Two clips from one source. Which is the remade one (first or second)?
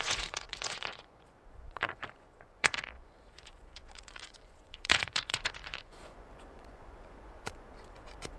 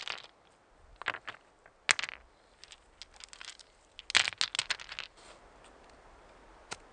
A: first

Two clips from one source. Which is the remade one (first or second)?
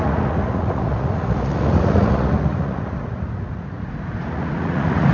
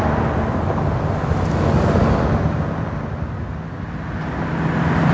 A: first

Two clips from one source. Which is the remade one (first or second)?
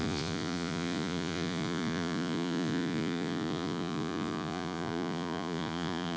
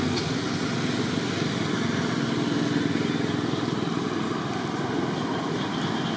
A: first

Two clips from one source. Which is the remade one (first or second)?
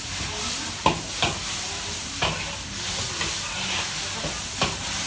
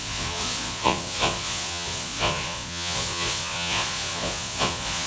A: second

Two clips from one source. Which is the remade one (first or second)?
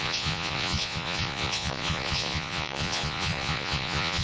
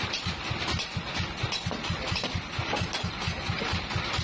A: first